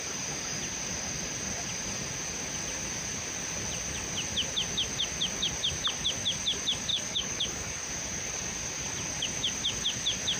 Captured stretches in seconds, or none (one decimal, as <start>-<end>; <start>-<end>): 0.0-6.9; 7.9-10.4